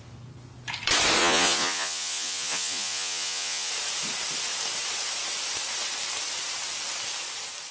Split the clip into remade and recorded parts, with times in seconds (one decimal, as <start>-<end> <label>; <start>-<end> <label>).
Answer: 0.0-1.2 recorded; 1.2-3.7 remade; 3.7-7.7 recorded